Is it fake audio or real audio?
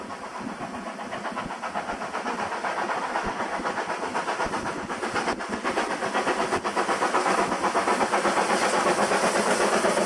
real